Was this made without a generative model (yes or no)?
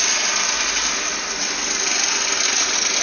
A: yes